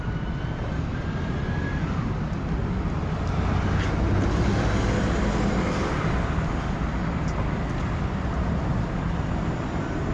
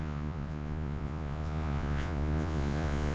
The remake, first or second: second